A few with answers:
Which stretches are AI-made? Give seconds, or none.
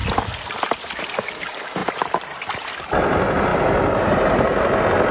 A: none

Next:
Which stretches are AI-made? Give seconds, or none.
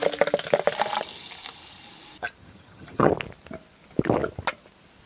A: 2.4-3.1 (vocoder, HiFi-GAN)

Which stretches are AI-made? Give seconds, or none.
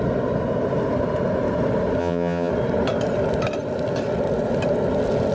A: 2.0-2.5 (vocoder, HiFi-GAN)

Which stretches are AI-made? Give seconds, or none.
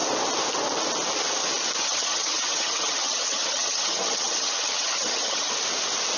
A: 1.8-5.5 (vocoder, HiFi-GAN)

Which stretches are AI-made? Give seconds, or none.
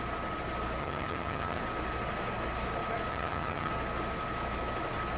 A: 0.8-1.6 (vocoder, HiFi-GAN); 3.1-3.7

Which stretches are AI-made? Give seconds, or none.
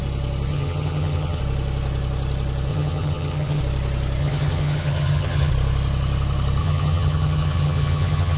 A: 0.5-1.4 (vocoder, HiFi-GAN); 2.7-3.6; 4.2-5.5; 6.6-8.4